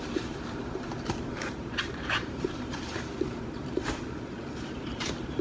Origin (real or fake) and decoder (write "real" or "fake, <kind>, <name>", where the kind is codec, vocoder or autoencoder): fake, vocoder, BigVGAN v2